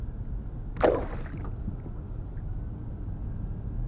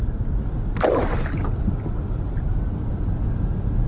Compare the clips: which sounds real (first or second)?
first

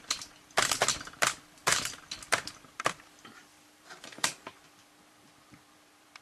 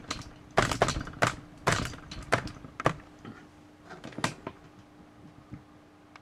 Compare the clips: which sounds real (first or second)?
second